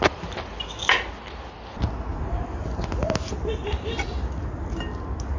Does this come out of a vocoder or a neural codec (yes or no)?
no